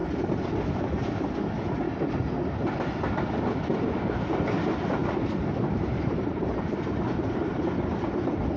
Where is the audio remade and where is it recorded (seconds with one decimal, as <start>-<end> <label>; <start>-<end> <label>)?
0.0-5.0 recorded; 5.0-7.7 remade; 7.7-8.6 recorded